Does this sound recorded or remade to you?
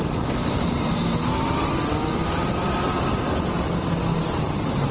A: recorded